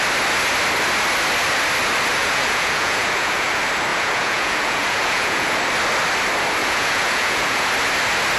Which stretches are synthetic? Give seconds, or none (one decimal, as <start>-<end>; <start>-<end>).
2.2-3.5; 3.9-5.6; 6.6-7.7